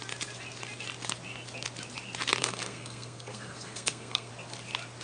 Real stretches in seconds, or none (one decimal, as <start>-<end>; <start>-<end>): 0.0-2.4; 4.3-5.0